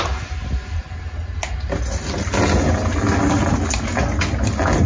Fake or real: real